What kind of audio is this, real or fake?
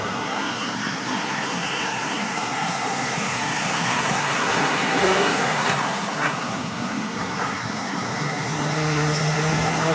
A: fake